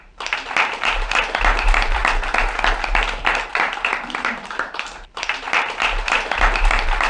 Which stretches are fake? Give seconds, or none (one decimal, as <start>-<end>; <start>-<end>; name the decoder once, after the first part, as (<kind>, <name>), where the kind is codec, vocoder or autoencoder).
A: 0.0-2.0 (vocoder, BigVGAN v2); 3.5-7.1